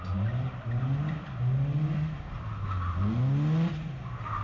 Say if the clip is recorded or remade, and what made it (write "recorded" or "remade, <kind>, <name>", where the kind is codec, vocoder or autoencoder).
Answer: recorded